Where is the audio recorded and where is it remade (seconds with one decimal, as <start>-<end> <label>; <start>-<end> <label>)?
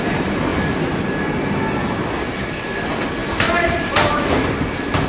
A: 0.0-3.2 recorded; 3.2-4.4 remade; 4.4-5.1 recorded